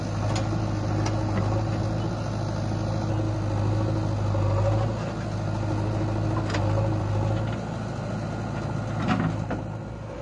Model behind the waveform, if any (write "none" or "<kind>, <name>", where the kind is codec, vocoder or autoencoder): none